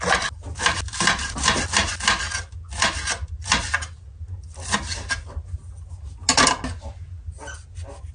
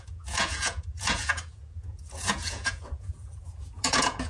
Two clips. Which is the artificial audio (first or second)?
second